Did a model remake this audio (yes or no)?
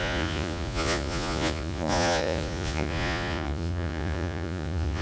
yes